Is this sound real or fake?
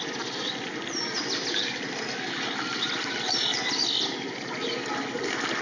real